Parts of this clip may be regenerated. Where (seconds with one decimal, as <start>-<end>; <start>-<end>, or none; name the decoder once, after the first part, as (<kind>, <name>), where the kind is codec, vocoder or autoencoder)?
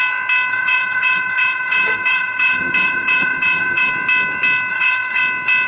0.5-3.9 (vocoder, HiFi-GAN); 4.7-5.2